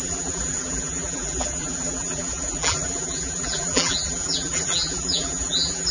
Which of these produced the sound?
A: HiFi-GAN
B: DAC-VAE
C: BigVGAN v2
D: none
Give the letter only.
C